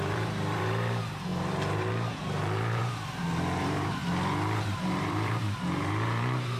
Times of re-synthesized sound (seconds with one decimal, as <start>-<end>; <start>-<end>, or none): 0.0-4.0; 4.6-6.6